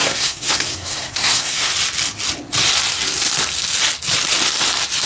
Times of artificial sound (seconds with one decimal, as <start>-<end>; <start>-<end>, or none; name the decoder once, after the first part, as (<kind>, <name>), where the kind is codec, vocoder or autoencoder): 0.0-1.7 (codec, SNAC)